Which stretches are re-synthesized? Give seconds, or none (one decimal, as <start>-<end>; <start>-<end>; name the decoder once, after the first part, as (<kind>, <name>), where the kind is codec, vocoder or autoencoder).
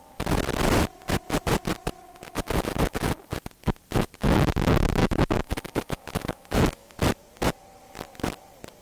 5.0-7.0 (autoencoder, DAC-VAE)